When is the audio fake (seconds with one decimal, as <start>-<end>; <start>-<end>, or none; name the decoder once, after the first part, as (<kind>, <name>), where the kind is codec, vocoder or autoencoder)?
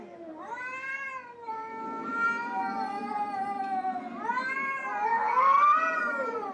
0.0-2.1 (vocoder, BigVGAN v2); 4.3-5.1; 6.0-6.5